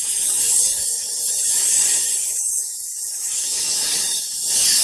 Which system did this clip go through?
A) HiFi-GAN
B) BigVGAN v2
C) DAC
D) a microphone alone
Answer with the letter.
C